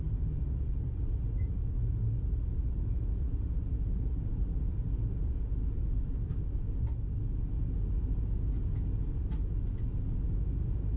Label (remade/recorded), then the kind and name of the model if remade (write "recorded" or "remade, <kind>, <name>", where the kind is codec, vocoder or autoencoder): recorded